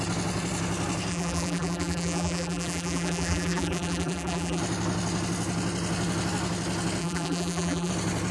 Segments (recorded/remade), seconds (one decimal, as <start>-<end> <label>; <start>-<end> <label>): 0.0-1.1 recorded; 1.1-4.6 remade; 4.6-7.0 recorded; 7.0-7.9 remade; 7.9-8.3 recorded